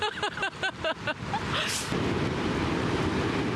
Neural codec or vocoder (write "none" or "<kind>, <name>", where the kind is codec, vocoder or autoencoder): none